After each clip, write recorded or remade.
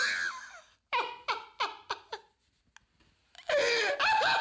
recorded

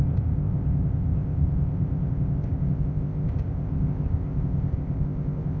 remade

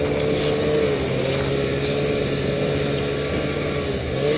recorded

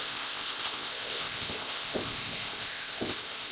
remade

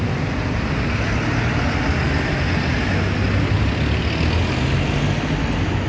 recorded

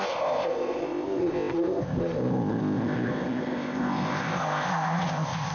remade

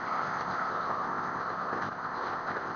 remade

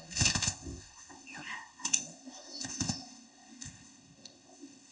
remade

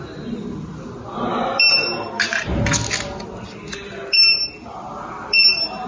recorded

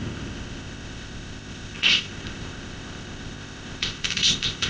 remade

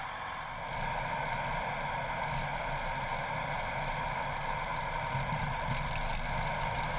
recorded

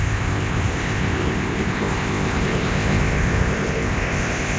remade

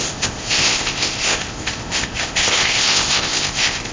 remade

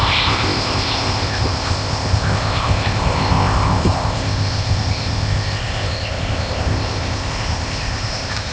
remade